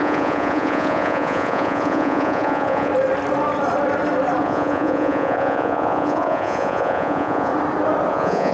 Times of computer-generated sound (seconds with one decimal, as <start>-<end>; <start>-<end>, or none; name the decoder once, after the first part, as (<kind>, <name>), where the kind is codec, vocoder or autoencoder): 0.0-2.9 (vocoder, Vocos); 4.4-7.5; 8.1-8.5